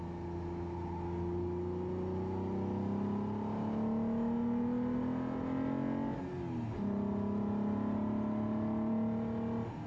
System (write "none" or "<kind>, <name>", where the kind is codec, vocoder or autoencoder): none